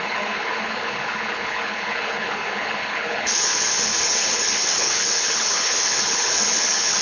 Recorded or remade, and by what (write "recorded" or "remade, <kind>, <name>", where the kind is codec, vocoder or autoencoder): remade, codec, HILCodec